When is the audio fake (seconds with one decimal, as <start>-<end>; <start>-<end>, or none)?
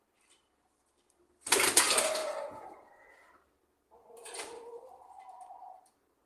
2.2-3.0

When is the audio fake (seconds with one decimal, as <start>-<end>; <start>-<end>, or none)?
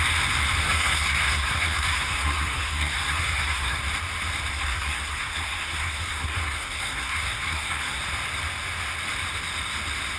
0.6-3.8; 4.5-8.0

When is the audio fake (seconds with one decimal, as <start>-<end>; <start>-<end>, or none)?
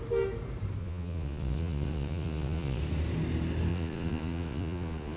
0.8-2.8; 3.7-5.2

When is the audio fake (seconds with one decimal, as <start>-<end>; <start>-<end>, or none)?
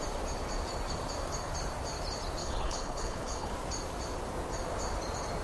2.4-3.5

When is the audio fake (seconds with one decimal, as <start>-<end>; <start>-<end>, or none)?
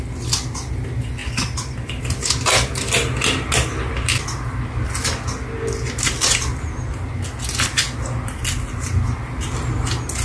none